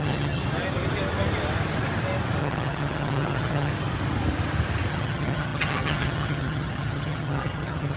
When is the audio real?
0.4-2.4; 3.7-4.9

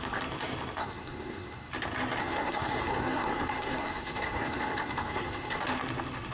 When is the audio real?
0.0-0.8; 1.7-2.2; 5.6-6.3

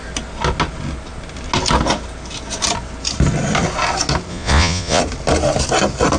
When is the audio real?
0.0-4.3; 5.0-6.2